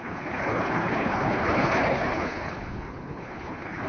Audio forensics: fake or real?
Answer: fake